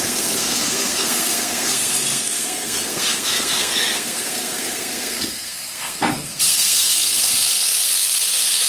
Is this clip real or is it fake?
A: fake